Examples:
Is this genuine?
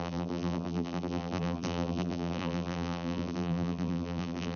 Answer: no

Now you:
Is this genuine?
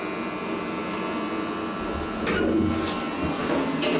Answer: yes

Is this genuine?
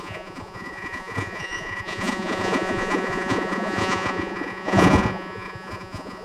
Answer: no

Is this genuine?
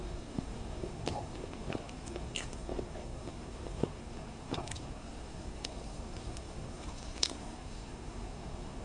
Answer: no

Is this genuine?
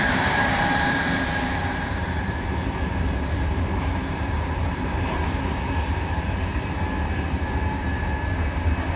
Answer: no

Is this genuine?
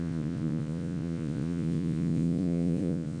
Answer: no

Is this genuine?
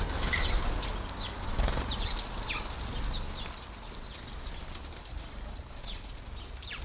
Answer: yes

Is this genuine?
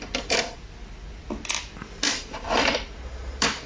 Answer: no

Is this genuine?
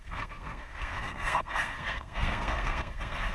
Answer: no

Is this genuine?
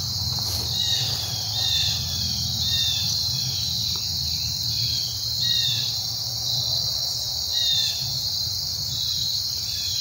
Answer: no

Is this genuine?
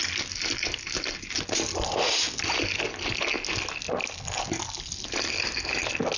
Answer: yes